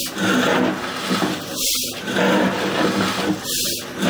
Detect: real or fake real